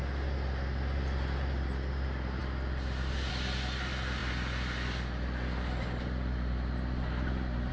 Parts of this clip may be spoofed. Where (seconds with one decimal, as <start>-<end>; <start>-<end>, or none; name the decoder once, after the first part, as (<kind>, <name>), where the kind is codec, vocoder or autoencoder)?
none